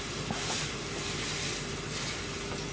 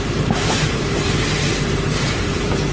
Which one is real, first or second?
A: first